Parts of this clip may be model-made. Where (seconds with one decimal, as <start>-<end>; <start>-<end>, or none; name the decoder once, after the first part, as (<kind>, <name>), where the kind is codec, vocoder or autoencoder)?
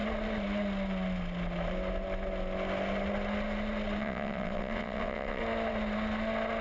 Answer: 4.0-5.4 (vocoder, WaveNeXt)